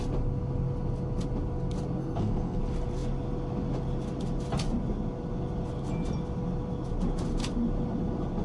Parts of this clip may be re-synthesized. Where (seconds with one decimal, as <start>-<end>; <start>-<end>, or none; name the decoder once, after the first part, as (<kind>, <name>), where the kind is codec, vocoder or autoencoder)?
2.0-2.6 (codec, SNAC)